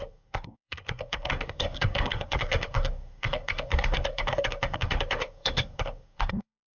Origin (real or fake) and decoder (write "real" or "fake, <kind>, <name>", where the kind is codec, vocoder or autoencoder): fake, codec, SNAC